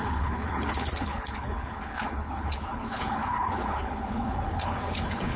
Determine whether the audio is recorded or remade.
remade